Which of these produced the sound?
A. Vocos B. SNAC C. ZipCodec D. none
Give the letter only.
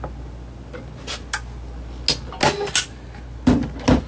D